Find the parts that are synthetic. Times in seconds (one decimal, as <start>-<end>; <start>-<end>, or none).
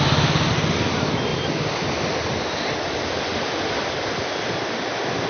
none